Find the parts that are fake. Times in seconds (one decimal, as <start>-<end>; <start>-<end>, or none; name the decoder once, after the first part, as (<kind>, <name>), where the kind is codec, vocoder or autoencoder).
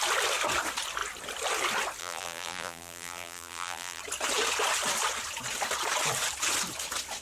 2.0-4.0 (vocoder, BigVGAN v2)